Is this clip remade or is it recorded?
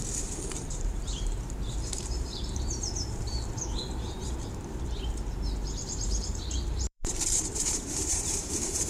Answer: remade